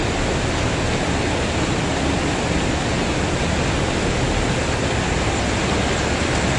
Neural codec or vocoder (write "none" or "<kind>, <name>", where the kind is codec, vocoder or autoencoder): none